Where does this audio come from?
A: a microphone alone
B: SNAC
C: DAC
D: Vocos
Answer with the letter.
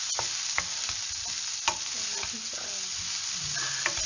A